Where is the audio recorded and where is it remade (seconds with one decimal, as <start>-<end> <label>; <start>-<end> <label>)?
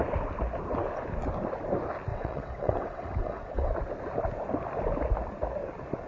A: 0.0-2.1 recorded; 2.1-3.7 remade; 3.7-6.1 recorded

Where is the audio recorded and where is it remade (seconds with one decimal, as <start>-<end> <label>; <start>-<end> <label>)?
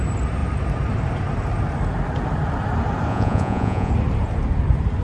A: 0.0-3.1 recorded; 3.1-3.9 remade; 3.9-5.0 recorded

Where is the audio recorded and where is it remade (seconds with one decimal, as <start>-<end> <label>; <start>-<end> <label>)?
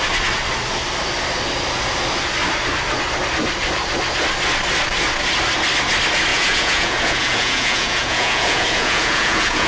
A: 0.0-6.3 recorded; 6.3-9.7 remade